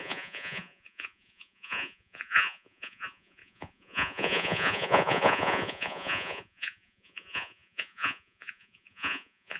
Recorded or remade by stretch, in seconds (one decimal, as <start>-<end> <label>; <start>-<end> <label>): 0.0-9.6 remade